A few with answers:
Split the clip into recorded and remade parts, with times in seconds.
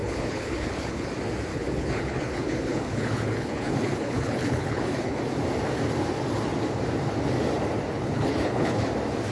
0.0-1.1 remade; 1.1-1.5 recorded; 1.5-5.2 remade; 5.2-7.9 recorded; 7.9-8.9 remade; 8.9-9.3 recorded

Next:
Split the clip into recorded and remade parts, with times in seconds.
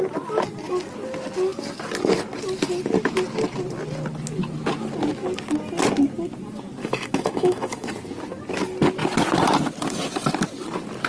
0.0-6.8 recorded; 6.8-7.9 remade; 7.9-11.1 recorded